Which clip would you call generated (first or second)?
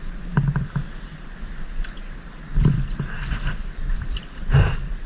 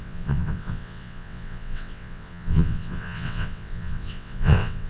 second